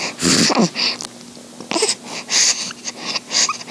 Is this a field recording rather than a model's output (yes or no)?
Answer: yes